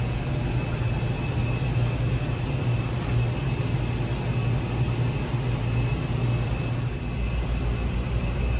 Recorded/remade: recorded